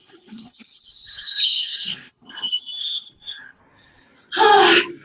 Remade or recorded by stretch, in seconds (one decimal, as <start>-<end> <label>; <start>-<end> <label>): 0.0-2.3 remade; 2.3-2.8 recorded; 2.8-3.6 remade; 3.6-5.0 recorded